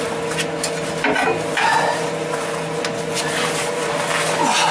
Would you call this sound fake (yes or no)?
no